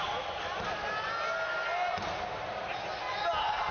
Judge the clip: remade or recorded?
recorded